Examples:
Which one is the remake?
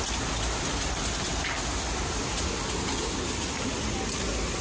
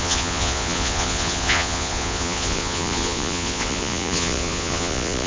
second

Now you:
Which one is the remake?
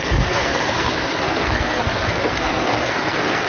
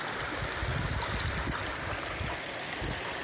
first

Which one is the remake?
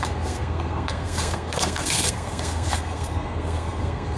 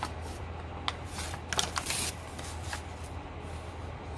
first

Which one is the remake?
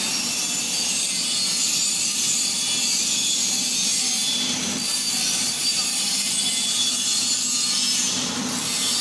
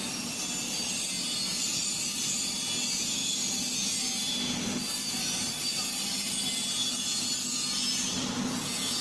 first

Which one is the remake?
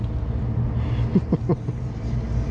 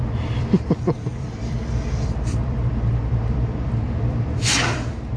second